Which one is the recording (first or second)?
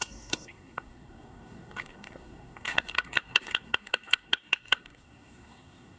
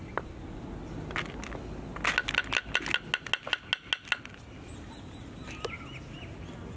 second